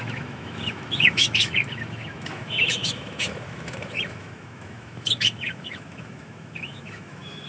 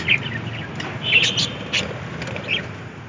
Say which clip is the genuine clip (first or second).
second